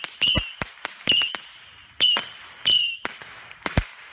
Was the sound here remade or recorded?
recorded